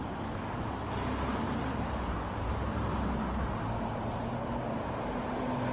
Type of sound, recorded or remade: remade